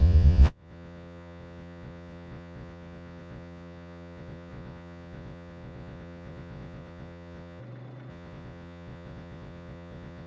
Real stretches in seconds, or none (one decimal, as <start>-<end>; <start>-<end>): 7.6-8.1